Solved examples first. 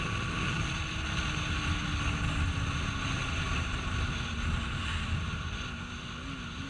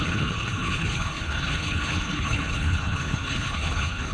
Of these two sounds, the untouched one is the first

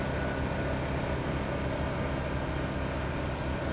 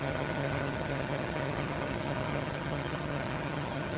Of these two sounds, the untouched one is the first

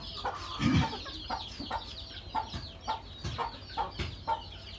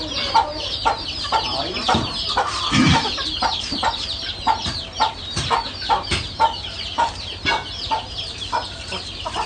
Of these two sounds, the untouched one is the first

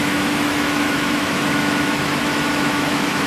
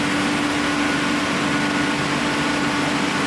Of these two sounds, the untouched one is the second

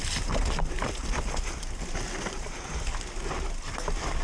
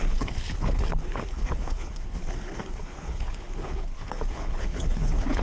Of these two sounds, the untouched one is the first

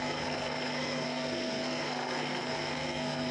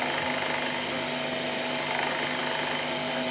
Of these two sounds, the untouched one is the second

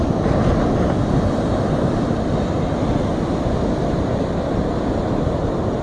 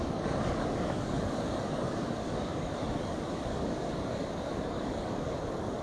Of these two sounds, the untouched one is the first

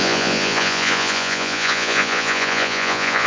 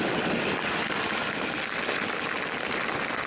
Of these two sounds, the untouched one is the second